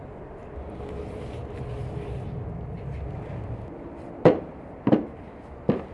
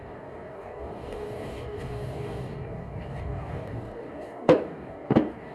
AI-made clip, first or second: second